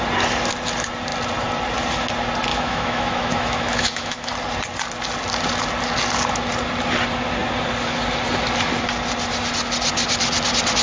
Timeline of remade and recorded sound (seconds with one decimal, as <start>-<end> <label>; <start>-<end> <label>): 0.0-2.5 recorded; 2.5-4.3 remade; 4.3-10.8 recorded